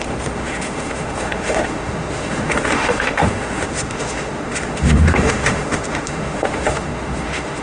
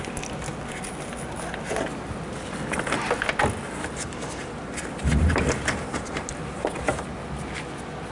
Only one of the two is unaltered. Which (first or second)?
second